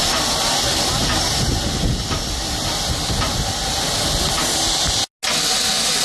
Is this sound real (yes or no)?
yes